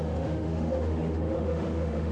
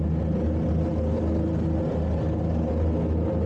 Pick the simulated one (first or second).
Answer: first